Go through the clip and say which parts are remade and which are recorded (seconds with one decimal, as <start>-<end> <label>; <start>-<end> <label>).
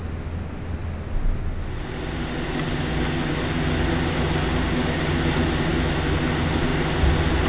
0.0-7.5 recorded